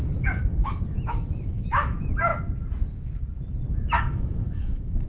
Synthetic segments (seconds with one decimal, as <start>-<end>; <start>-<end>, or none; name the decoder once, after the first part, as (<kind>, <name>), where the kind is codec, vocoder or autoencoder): 0.0-2.3 (autoencoder, DAC-VAE); 3.7-5.1